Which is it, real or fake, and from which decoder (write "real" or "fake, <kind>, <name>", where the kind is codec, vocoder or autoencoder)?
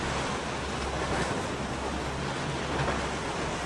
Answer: real